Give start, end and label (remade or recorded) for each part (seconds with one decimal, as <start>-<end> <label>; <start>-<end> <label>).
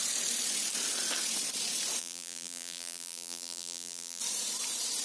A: 0.0-2.0 recorded; 2.0-4.2 remade; 4.2-5.0 recorded